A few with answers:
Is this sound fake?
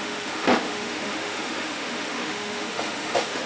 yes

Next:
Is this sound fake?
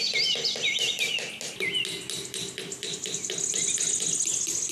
no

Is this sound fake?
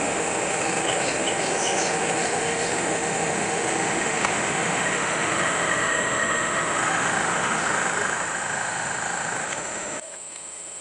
yes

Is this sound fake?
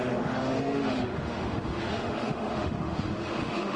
yes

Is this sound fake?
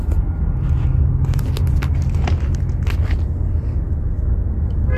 no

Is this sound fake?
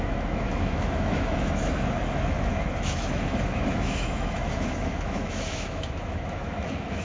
yes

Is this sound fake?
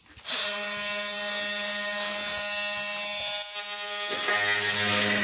no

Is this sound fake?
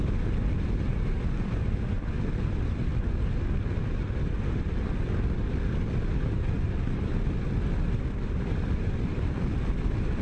no